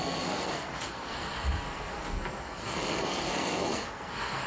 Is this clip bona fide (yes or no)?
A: no